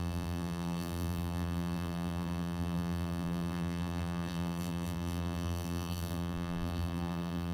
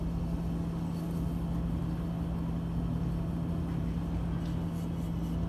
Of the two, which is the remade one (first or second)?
first